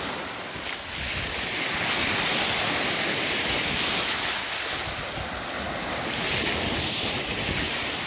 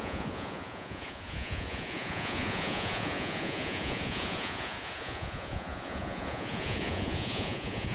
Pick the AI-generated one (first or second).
second